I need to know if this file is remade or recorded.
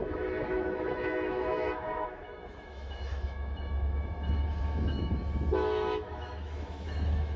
remade